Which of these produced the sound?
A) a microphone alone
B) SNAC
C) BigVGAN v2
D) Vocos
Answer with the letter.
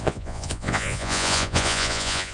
D